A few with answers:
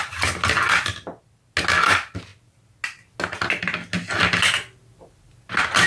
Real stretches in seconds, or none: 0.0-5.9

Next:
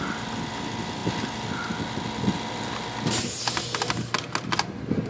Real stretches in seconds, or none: 0.0-5.1